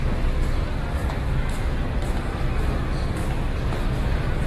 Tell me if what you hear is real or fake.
real